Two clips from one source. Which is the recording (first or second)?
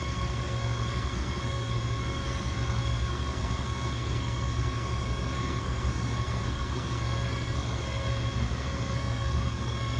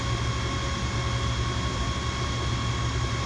second